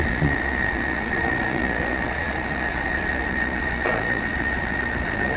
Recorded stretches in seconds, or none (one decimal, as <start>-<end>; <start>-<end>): none